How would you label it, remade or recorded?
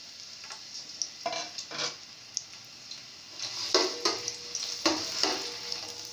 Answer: recorded